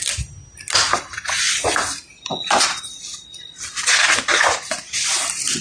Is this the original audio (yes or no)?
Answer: yes